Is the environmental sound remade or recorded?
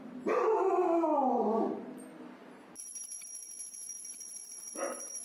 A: recorded